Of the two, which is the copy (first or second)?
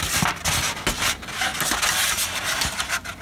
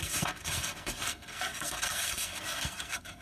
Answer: second